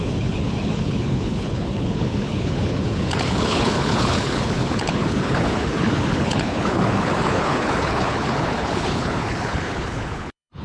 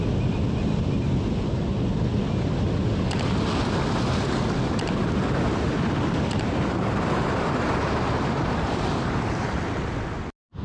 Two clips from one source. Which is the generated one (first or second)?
first